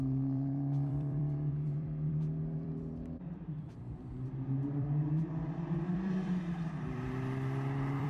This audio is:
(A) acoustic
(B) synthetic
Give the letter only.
B